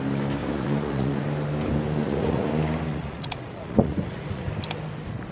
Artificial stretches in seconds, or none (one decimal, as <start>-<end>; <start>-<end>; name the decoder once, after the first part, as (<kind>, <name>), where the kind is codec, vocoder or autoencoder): 0.4-1.2 (vocoder, Vocos); 2.0-2.5; 2.9-4.5